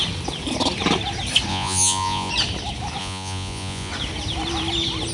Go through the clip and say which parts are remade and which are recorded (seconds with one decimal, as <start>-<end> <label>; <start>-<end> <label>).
0.0-1.5 recorded; 1.5-2.3 remade; 2.3-3.0 recorded; 3.0-3.9 remade; 3.9-5.1 recorded